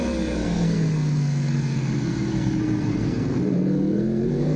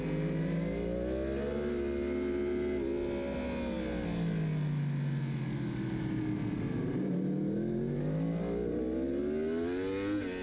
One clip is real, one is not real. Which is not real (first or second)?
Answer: first